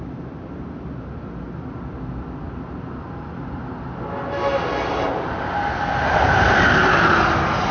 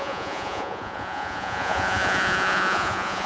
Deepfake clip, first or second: second